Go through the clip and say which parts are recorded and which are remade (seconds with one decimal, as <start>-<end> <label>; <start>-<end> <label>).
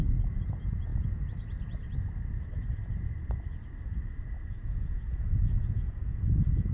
0.0-0.9 remade; 0.9-4.5 recorded; 4.5-6.7 remade